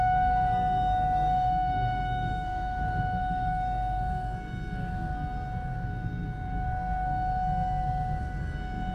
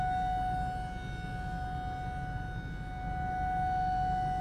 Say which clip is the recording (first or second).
second